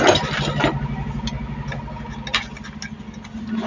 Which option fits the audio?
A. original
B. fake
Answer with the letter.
A